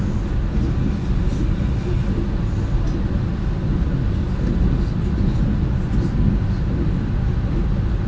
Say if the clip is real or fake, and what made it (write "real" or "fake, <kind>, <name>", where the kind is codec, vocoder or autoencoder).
real